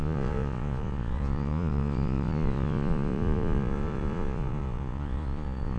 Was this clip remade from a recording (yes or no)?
yes